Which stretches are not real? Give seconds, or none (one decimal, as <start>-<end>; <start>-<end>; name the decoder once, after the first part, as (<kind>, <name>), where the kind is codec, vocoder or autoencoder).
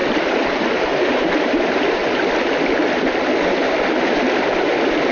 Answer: 0.0-2.0 (vocoder, BigVGAN v2)